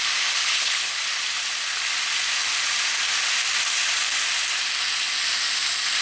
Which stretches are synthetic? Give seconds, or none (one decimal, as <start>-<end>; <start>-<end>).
0.4-1.0